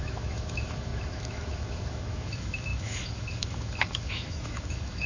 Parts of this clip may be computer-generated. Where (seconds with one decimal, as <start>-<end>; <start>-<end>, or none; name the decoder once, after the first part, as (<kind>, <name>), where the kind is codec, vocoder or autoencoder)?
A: 0.0-5.1 (autoencoder, DAC-VAE)